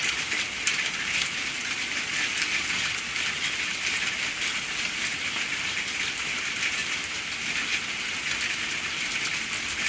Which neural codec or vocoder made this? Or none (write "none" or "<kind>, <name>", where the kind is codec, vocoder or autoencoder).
none